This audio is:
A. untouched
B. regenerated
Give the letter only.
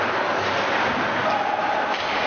A